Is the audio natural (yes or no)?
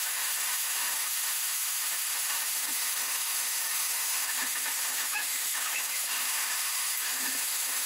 no